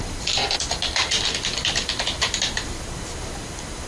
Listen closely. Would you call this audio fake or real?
real